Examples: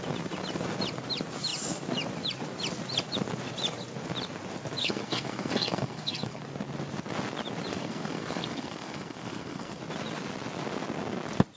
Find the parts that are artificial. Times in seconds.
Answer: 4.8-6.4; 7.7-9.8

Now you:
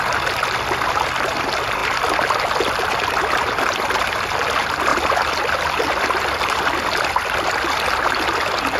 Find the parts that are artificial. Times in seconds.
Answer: none

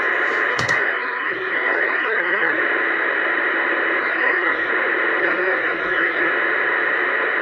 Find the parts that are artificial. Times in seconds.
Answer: 0.5-2.6; 4.0-4.7; 5.2-6.3

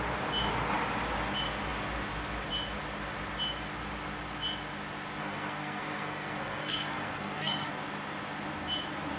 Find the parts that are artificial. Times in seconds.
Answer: 5.2-7.7

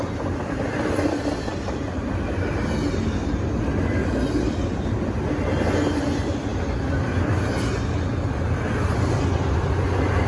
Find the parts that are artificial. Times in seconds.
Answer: none

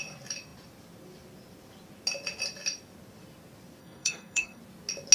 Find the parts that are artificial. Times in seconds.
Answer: 3.8-4.6